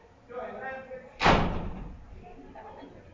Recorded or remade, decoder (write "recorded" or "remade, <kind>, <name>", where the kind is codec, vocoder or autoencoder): recorded